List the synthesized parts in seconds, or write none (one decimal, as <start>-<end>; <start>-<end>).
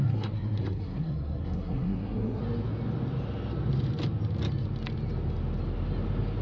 0.0-2.4